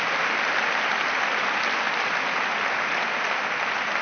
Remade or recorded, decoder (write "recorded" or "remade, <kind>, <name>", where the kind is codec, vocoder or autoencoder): recorded